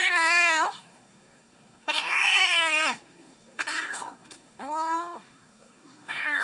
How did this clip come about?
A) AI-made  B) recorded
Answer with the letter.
A